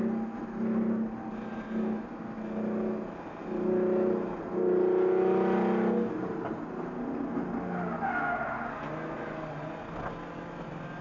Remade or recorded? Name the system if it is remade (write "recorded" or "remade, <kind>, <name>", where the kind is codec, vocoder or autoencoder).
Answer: recorded